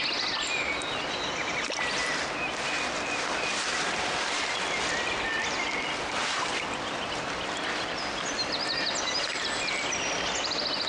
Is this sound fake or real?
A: real